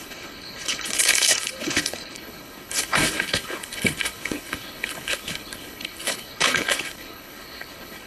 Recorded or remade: remade